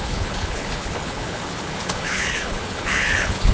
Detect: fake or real fake